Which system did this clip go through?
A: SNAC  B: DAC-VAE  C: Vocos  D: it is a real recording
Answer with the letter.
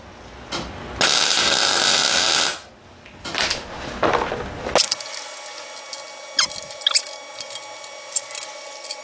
D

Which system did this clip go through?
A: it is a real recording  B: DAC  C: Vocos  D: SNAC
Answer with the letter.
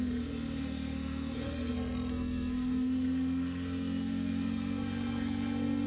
D